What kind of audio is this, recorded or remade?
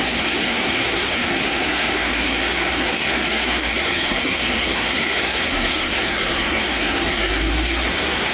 remade